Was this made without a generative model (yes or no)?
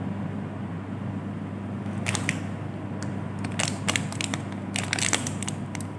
yes